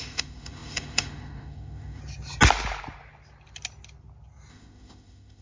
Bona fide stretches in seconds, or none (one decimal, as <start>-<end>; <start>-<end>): 2.0-4.5